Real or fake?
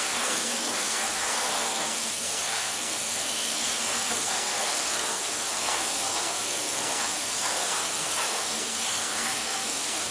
fake